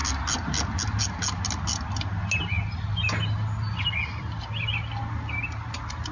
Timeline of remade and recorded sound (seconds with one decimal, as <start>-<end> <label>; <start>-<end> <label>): 0.0-6.1 recorded